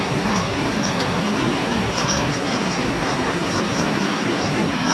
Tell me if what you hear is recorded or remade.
remade